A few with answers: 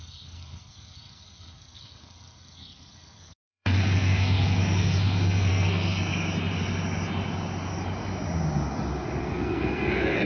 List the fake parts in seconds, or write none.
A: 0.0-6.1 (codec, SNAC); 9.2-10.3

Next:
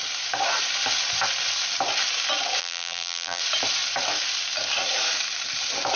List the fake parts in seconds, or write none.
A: 2.6-3.4 (vocoder, BigVGAN v2)